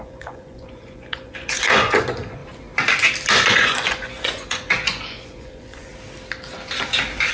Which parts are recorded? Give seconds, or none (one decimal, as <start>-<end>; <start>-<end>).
2.4-3.3; 5.9-7.3